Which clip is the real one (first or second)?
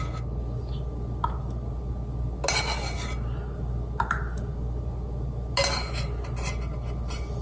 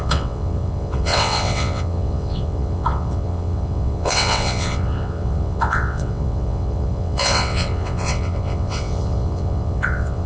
first